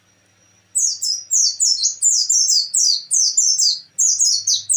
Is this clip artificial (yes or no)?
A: no